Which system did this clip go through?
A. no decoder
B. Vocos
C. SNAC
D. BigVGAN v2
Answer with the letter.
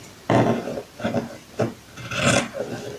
A